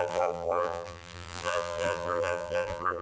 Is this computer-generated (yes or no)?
yes